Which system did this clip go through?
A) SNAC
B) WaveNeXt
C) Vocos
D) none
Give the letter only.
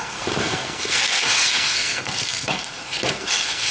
A